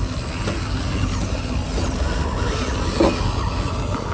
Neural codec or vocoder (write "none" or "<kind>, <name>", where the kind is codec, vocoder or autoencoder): none